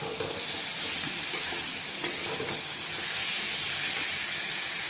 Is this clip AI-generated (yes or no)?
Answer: no